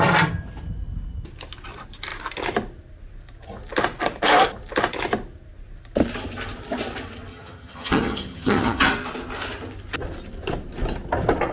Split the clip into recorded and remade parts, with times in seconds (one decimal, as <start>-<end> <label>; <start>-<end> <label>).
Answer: 0.0-7.3 recorded; 7.3-8.9 remade; 8.9-11.5 recorded